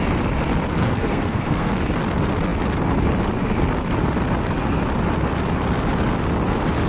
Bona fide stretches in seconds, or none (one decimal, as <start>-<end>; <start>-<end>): 0.0-0.8; 1.7-6.9